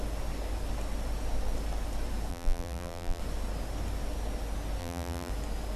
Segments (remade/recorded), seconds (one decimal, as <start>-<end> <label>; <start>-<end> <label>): 0.0-2.3 recorded; 2.3-3.2 remade; 3.2-4.8 recorded; 4.8-5.3 remade; 5.3-5.8 recorded